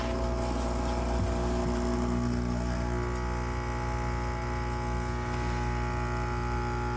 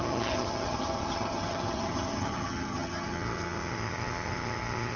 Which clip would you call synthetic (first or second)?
second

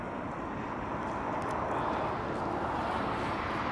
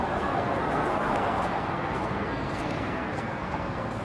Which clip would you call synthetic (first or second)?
second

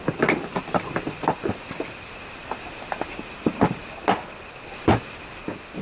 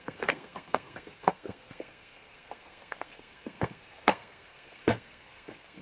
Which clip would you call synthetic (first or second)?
second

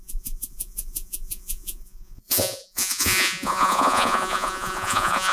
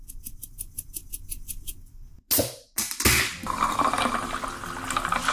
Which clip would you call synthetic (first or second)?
first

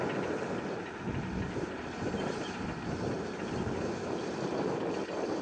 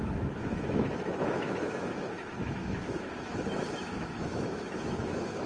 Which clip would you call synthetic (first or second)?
second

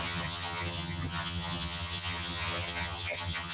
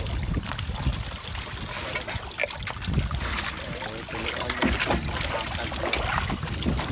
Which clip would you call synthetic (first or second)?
first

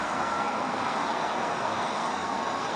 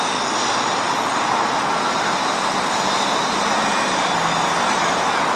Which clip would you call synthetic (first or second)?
first